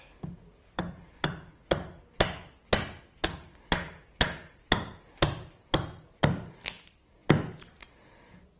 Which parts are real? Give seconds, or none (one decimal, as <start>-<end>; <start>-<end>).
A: 0.0-8.6